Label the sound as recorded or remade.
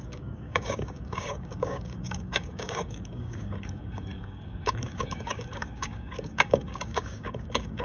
remade